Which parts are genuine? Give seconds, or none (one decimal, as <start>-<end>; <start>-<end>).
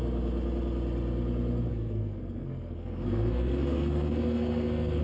0.0-1.7